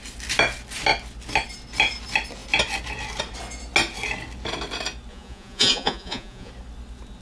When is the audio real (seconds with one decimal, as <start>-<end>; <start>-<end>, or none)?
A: 0.0-5.1; 6.5-7.2